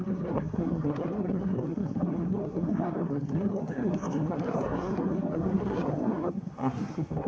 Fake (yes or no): yes